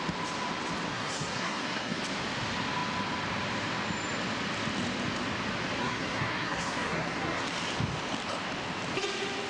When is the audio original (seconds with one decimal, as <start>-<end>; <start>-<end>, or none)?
0.0-0.9; 2.0-5.8; 7.4-9.5